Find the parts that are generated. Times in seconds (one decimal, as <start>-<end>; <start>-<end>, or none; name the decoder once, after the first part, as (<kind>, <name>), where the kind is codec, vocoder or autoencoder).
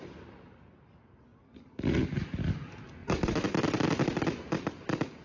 3.0-3.6 (vocoder, BigVGAN v2)